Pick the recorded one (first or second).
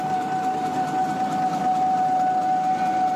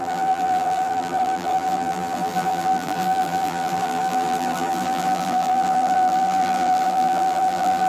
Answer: first